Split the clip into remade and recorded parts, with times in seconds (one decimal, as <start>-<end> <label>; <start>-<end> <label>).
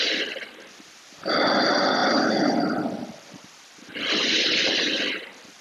0.0-5.6 recorded